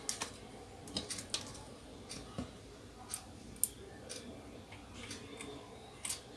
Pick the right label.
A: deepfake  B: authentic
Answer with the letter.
B